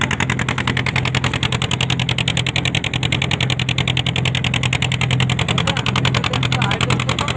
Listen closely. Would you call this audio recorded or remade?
recorded